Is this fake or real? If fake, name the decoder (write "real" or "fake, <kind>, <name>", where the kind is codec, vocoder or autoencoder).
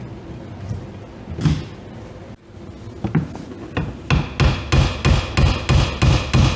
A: real